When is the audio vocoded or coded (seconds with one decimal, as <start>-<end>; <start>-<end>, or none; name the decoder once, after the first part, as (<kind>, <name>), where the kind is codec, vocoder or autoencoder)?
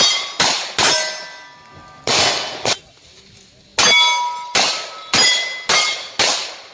none